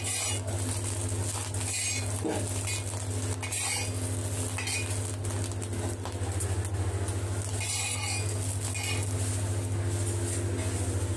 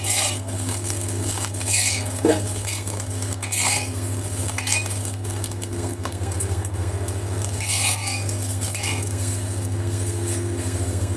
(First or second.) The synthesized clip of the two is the second